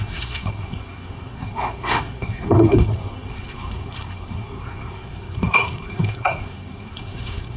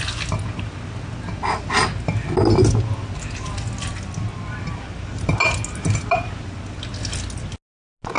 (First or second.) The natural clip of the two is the second